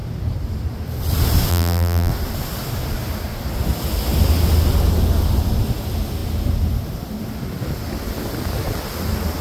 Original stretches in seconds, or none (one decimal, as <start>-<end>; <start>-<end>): 0.0-1.5; 2.1-9.4